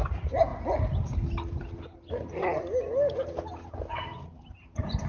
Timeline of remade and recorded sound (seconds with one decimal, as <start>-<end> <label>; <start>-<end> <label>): 0.0-5.1 recorded